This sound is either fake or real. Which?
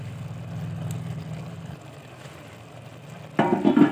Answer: real